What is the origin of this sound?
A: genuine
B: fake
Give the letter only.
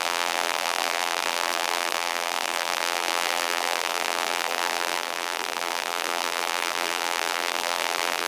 B